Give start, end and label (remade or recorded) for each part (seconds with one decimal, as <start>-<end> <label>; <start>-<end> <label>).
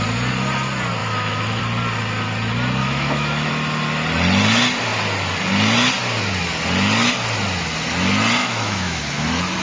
0.0-1.0 recorded; 1.0-1.6 remade; 1.6-2.8 recorded; 2.8-3.5 remade; 3.5-8.4 recorded; 8.4-9.0 remade; 9.0-9.6 recorded